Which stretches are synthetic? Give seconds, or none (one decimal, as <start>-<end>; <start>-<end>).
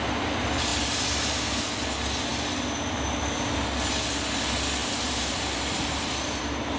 0.7-1.6; 4.8-6.8